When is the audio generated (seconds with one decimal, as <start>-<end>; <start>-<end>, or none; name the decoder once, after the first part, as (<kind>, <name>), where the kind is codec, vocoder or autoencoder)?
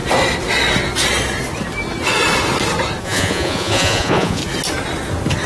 3.0-4.4 (vocoder, Vocos)